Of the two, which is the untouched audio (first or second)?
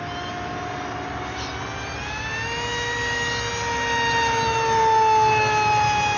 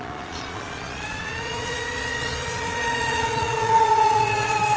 first